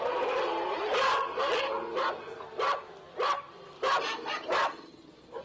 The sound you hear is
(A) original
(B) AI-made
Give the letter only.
A